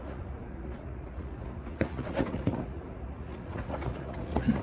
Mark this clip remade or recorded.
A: remade